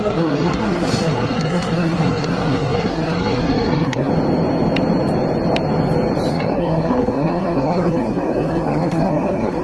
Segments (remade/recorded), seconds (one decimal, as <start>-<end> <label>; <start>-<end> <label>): 0.0-4.1 remade; 4.1-6.3 recorded; 6.3-9.6 remade